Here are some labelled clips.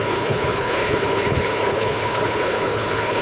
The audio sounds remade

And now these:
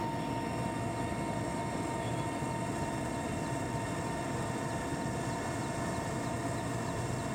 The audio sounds recorded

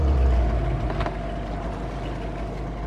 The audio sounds recorded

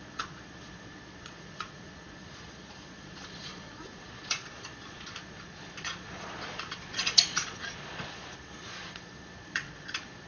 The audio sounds remade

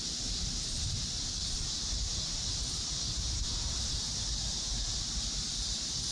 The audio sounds remade